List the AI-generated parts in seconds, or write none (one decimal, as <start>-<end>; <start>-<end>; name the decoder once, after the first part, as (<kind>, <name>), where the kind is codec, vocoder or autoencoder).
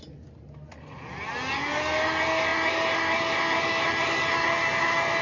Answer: none